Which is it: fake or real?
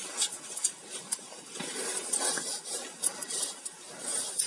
fake